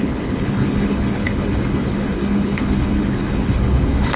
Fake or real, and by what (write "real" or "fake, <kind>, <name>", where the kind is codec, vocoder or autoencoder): fake, codec, HILCodec